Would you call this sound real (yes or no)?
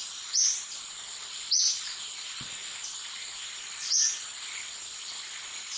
yes